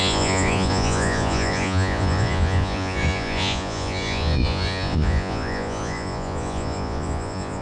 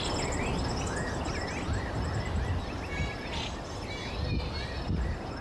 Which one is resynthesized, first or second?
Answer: first